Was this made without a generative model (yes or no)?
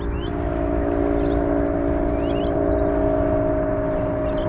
yes